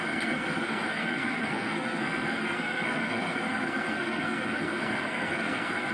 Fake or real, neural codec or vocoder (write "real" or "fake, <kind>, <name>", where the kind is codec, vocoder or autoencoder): fake, codec, SNAC